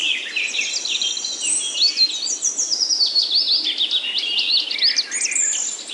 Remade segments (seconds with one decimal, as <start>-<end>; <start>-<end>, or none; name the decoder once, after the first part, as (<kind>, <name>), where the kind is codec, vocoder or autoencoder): none